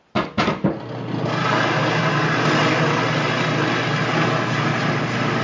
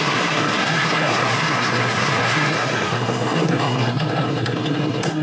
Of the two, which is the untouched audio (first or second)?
first